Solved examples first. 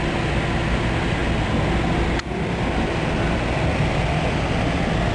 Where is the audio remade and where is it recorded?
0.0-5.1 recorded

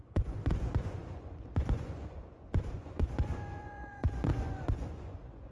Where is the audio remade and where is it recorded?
0.0-5.5 remade

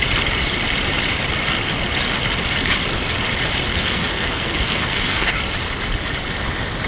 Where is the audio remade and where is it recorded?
0.0-3.7 recorded; 3.7-5.3 remade; 5.3-6.9 recorded

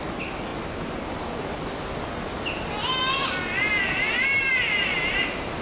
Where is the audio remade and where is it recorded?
0.0-5.6 recorded

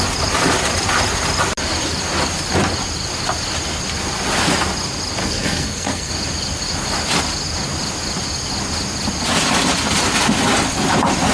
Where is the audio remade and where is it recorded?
0.0-5.2 recorded; 5.2-6.1 remade; 6.1-11.3 recorded

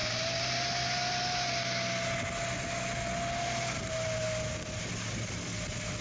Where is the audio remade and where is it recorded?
0.0-6.0 recorded

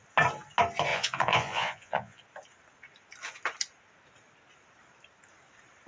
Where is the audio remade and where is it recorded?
0.0-0.9 recorded; 0.9-2.2 remade; 2.2-5.9 recorded